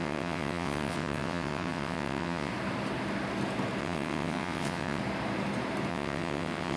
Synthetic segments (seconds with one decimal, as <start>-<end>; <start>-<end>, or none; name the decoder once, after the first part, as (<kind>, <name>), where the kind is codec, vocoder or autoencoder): 0.0-2.5 (vocoder, WaveNeXt); 3.8-5.0; 5.9-6.8

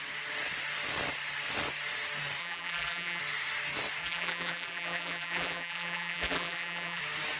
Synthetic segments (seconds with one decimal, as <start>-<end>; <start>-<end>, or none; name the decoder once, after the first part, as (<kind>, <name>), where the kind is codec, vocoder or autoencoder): 2.4-3.2 (vocoder, BigVGAN v2); 4.0-7.0

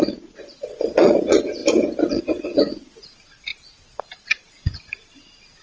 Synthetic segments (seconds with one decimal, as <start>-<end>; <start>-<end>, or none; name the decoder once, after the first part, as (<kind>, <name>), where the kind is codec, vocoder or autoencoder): 0.0-1.6 (vocoder, Vocos); 2.1-5.6

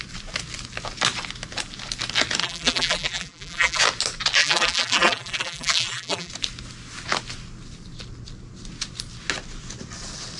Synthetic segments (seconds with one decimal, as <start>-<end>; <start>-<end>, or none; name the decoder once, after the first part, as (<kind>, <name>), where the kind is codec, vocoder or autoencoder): 2.4-3.8 (vocoder, BigVGAN v2); 4.4-6.3

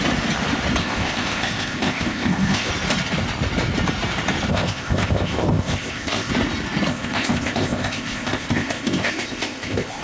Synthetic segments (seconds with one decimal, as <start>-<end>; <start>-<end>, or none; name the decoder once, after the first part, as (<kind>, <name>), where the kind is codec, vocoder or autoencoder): 0.8-2.7 (codec, ZipCodec); 4.5-6.3; 6.9-10.0